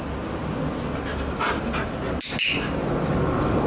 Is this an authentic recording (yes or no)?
yes